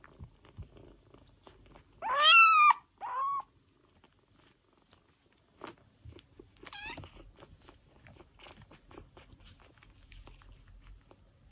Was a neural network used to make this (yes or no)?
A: no